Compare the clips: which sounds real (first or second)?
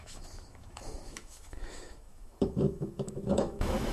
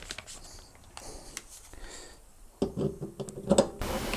second